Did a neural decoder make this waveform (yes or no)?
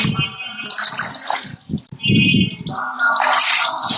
no